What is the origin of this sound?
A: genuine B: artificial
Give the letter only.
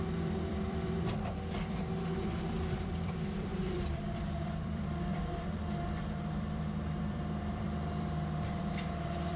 B